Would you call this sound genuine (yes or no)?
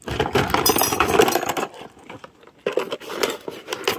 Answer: yes